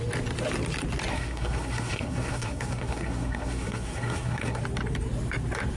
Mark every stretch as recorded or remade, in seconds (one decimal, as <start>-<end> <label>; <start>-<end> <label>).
0.0-1.1 recorded; 1.1-4.6 remade; 4.6-5.8 recorded